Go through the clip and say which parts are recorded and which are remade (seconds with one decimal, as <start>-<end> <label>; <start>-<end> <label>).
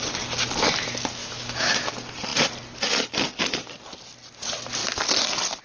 0.0-1.2 recorded; 1.2-1.9 remade; 1.9-5.6 recorded